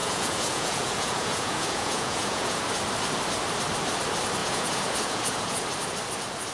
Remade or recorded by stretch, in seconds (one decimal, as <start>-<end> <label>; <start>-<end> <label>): 0.0-2.6 remade; 2.6-4.4 recorded; 4.4-5.6 remade; 5.6-6.5 recorded